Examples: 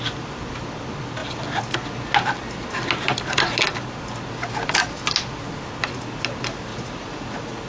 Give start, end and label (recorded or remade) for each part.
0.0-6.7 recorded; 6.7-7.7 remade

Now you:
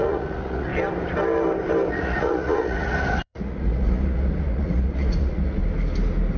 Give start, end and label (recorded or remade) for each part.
0.0-0.7 remade; 0.7-1.9 recorded; 1.9-5.6 remade; 5.6-6.4 recorded